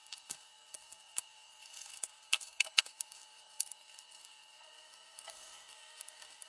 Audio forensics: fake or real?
fake